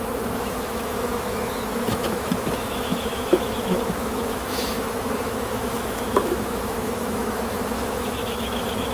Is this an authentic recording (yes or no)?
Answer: no